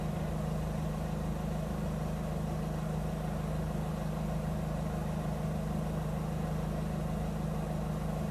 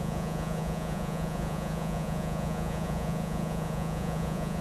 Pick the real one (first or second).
first